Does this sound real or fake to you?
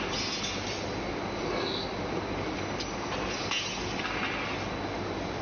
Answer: real